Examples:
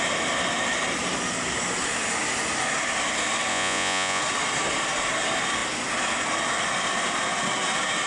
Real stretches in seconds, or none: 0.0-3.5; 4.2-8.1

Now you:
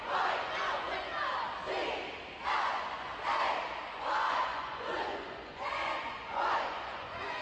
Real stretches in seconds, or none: 1.1-2.6; 3.1-3.9

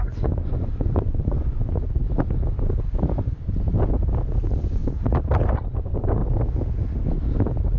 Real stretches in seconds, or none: 2.0-4.3; 4.8-5.8; 6.2-7.8

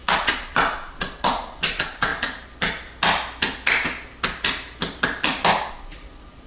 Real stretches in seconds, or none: 2.1-5.7